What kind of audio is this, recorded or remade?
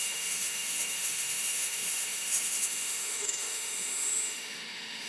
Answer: remade